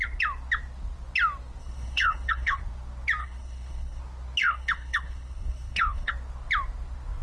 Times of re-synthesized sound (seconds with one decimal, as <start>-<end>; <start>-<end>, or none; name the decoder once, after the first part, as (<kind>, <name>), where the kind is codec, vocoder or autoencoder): 1.6-2.6 (codec, HILCodec); 3.2-4.0; 4.4-6.1